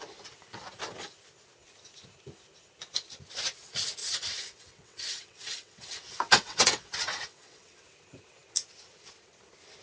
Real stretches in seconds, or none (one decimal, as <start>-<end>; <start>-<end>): 0.0-4.0; 7.8-9.8